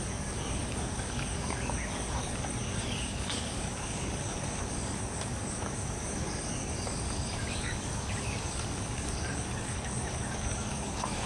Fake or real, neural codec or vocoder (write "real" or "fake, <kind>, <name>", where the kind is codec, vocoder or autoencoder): fake, codec, DAC